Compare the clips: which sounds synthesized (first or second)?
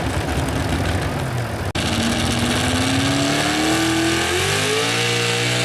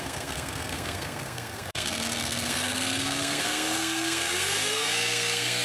second